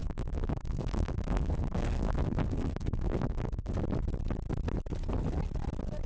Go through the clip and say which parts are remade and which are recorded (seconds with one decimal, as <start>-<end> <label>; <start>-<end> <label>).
0.0-3.7 remade; 3.7-6.1 recorded